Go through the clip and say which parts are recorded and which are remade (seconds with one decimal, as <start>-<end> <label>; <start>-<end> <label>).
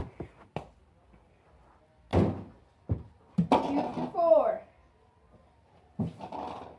0.0-6.8 recorded